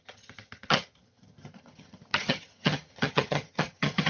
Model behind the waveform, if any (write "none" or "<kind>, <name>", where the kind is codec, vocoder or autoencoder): vocoder, HiFi-GAN